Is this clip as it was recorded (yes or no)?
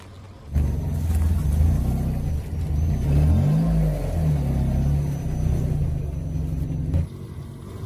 yes